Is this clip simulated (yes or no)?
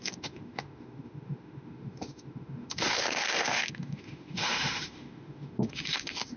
yes